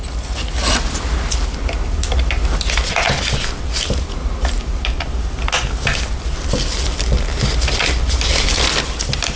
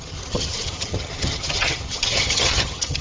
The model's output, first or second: second